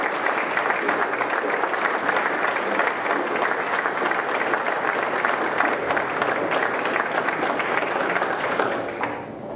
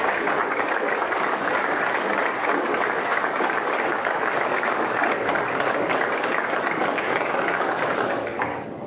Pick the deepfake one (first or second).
second